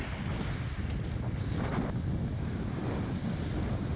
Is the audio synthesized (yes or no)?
no